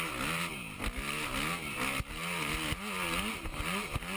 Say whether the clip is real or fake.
real